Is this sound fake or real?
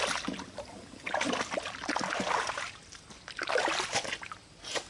real